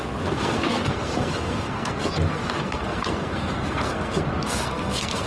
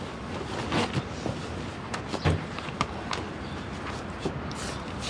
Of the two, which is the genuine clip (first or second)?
second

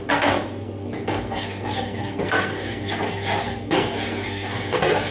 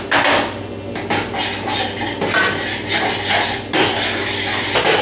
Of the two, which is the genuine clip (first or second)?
second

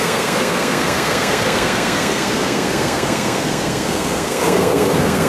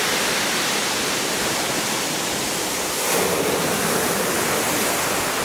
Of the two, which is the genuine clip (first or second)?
second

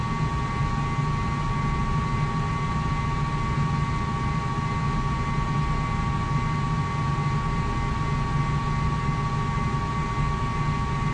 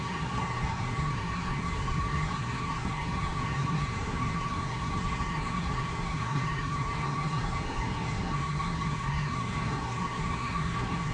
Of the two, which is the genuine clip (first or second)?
first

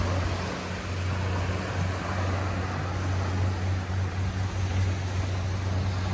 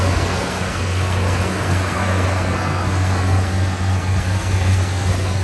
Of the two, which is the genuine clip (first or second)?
first